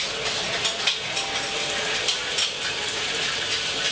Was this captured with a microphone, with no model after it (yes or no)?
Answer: yes